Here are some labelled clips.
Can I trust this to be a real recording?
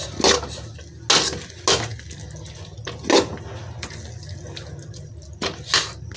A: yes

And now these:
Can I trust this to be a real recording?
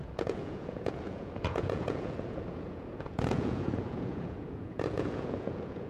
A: no